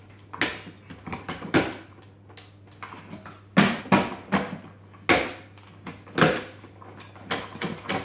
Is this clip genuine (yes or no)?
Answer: yes